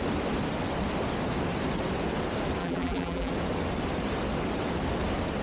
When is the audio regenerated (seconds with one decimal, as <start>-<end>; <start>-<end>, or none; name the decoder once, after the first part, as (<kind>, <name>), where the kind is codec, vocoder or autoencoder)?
2.6-3.3 (vocoder, BigVGAN v2)